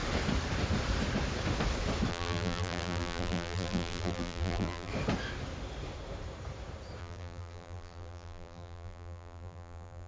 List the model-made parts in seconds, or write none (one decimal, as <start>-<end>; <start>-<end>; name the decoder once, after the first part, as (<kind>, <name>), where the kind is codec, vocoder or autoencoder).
2.1-4.9 (vocoder, BigVGAN v2); 7.0-10.1